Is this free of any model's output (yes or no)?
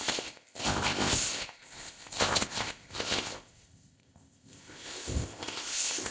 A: no